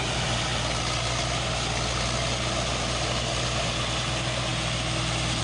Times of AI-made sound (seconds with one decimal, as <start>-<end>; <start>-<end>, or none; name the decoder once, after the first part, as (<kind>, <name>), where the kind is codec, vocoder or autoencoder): none